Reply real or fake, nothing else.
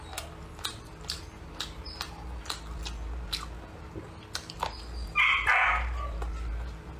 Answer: real